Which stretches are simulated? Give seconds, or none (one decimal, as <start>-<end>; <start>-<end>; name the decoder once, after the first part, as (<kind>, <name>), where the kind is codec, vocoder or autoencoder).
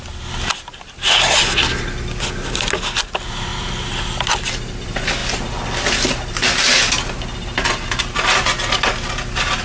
none